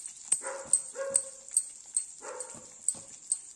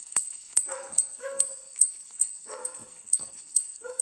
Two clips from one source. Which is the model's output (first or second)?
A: second